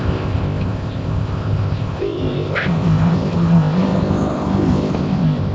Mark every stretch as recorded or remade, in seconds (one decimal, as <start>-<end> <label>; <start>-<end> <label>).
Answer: 0.0-5.5 remade

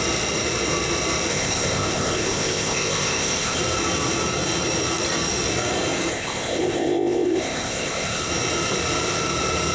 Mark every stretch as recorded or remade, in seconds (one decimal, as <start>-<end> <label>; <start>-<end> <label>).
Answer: 0.0-1.3 recorded; 1.3-3.6 remade; 3.6-6.1 recorded; 6.1-8.3 remade; 8.3-9.7 recorded

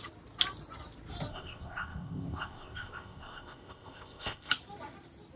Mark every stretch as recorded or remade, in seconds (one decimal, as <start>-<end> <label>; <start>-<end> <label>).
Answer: 0.0-1.3 recorded; 1.3-4.5 remade; 4.5-5.4 recorded

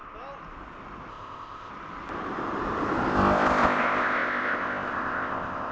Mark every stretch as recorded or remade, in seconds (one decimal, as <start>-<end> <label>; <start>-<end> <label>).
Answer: 0.0-1.1 recorded; 1.1-1.7 remade; 1.7-3.1 recorded; 3.1-5.7 remade

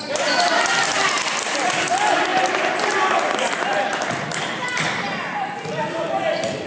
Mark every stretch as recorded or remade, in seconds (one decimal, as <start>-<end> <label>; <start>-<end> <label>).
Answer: 0.0-6.7 recorded